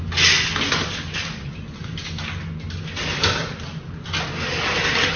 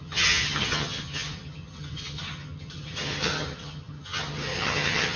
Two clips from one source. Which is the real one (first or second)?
first